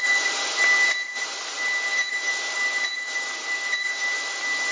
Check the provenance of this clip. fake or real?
real